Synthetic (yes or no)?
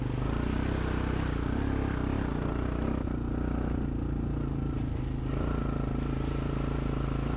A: no